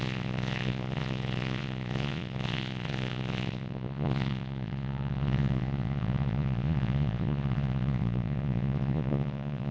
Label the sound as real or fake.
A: fake